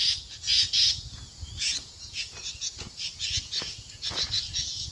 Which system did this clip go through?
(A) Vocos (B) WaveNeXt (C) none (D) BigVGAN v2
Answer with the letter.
A